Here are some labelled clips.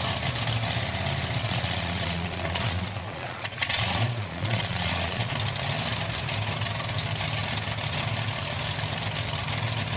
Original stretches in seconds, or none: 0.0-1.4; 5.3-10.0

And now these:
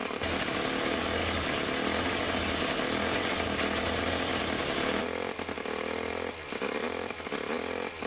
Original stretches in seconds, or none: 0.0-4.3; 5.0-8.1

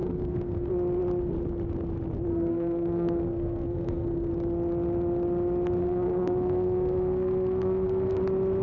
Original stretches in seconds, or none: 0.7-2.3; 4.3-5.8; 8.2-8.6